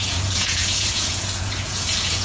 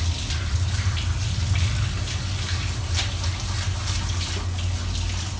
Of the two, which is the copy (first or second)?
first